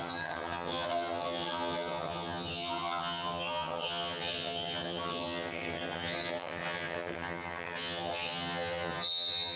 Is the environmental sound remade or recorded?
remade